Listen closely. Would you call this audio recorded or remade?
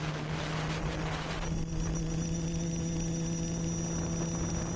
recorded